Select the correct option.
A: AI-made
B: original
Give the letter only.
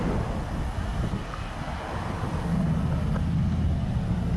B